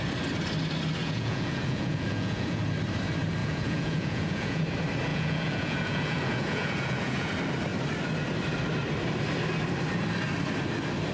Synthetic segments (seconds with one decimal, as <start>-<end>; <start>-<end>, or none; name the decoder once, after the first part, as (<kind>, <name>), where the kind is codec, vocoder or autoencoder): 1.0-2.6 (vocoder, Vocos); 3.4-4.6; 5.1-7.3